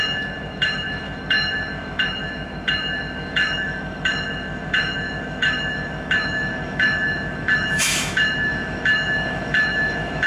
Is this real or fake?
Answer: fake